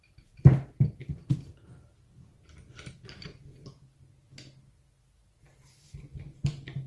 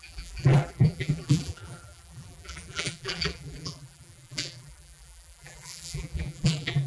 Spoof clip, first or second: second